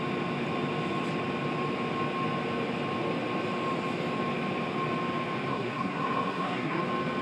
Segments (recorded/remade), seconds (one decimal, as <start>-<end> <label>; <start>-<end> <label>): 0.0-5.5 recorded; 5.5-6.8 remade; 6.8-7.2 recorded